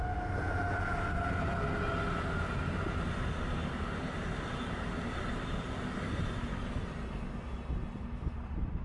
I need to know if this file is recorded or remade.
recorded